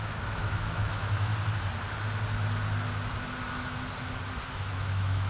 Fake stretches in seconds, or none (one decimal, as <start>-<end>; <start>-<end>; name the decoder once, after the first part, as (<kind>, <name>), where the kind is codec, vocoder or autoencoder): 0.0-1.3 (autoencoder, DAC-VAE); 4.5-5.3